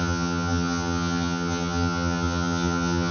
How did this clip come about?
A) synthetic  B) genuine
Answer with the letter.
A